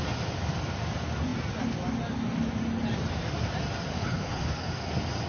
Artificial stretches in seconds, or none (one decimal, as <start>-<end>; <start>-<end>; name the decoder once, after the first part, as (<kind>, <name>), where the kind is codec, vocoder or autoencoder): 3.9-4.7 (codec, HILCodec)